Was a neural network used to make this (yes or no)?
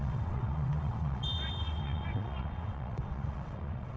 yes